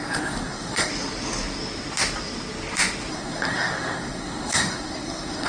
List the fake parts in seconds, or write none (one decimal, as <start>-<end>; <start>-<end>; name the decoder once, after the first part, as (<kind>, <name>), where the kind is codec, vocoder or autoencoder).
0.0-0.9 (codec, SNAC); 3.1-5.5